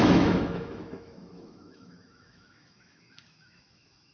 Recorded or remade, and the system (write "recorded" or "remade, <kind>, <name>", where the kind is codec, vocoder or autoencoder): remade, autoencoder, DAC-VAE